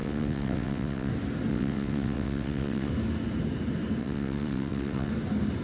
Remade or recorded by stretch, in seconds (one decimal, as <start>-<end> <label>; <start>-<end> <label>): 0.0-1.1 remade; 1.1-1.5 recorded; 1.5-2.9 remade; 2.9-4.0 recorded; 4.0-5.1 remade; 5.1-5.6 recorded